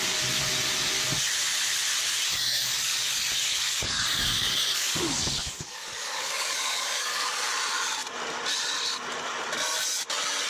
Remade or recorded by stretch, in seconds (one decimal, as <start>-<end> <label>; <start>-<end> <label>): 0.0-2.3 recorded; 2.3-7.5 remade; 7.5-10.5 recorded